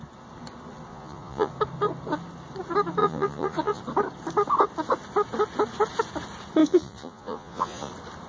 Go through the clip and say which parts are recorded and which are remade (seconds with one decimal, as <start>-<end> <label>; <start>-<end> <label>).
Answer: 0.0-0.9 recorded; 0.9-1.5 remade; 1.5-3.0 recorded; 3.0-3.8 remade; 3.8-6.6 recorded; 6.6-7.9 remade; 7.9-8.3 recorded